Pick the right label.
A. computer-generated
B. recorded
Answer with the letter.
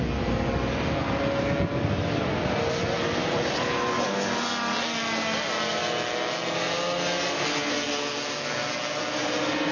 B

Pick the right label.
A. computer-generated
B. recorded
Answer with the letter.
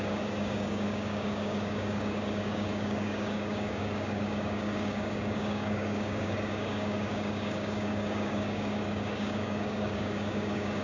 A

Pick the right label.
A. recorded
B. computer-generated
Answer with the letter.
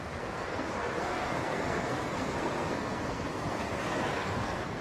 B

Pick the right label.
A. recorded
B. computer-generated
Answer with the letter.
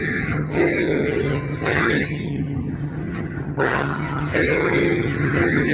B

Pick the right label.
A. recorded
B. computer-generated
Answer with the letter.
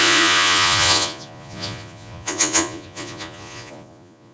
B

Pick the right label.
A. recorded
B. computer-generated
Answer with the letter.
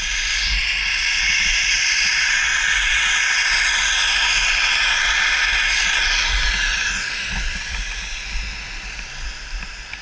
A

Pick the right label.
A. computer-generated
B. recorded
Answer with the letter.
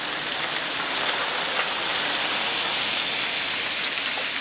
B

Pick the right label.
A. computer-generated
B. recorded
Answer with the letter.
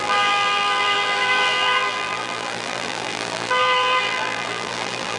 A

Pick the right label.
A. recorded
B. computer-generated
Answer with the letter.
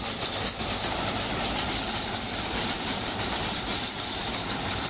B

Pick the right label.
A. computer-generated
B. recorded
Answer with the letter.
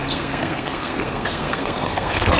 A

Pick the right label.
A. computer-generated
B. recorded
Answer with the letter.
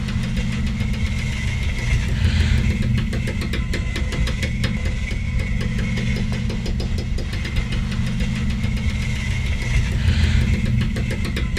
B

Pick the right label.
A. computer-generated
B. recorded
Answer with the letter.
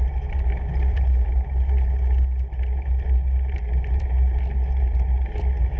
B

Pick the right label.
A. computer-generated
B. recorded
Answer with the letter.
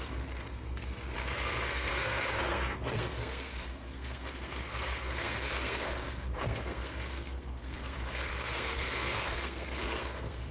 A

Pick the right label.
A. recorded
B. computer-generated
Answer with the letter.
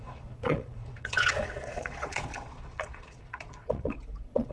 B